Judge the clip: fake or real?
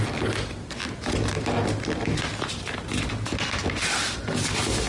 real